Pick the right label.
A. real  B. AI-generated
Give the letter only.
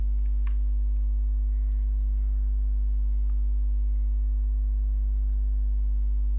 A